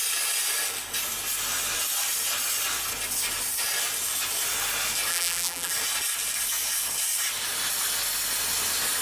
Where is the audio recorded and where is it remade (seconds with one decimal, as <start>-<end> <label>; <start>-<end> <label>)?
0.0-5.1 recorded; 5.1-5.7 remade; 5.7-9.0 recorded